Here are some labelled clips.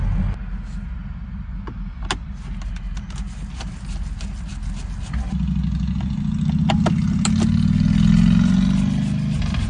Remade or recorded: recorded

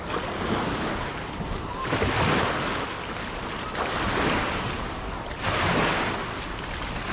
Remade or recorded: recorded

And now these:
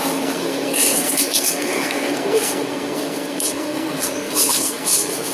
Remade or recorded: remade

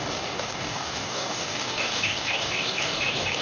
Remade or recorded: remade